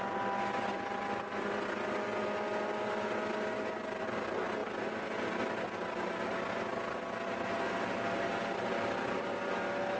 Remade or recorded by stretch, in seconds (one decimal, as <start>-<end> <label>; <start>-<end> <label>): 0.0-10.0 recorded